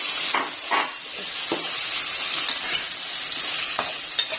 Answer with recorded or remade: recorded